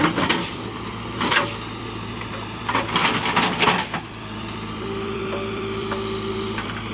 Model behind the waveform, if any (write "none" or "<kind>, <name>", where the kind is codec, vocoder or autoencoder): vocoder, BigVGAN v2